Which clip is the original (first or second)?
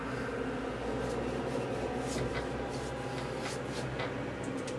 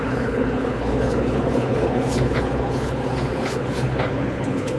first